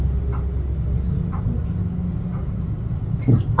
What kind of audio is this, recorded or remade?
recorded